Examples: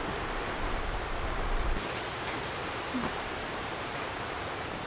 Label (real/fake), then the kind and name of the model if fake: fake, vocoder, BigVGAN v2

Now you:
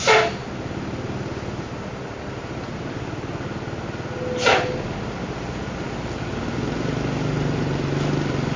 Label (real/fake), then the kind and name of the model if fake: real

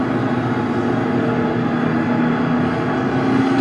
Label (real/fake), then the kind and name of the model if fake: real